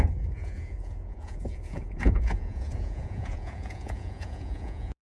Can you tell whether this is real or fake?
fake